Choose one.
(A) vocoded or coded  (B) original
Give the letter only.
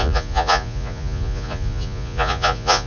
A